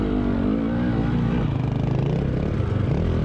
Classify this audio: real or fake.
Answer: real